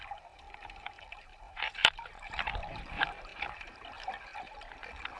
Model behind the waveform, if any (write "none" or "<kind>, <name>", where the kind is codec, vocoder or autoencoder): vocoder, BigVGAN v2